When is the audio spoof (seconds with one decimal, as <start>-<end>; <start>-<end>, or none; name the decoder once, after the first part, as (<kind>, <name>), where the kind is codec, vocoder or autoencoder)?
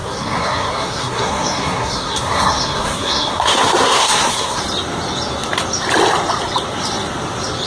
0.0-4.6 (codec, SNAC)